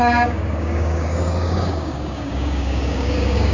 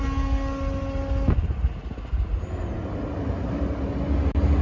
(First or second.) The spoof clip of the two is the first